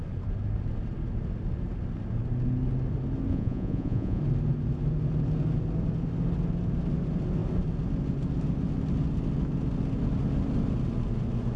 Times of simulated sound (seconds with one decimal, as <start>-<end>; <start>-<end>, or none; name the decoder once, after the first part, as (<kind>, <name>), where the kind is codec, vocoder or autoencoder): 3.3-4.2 (vocoder, Vocos)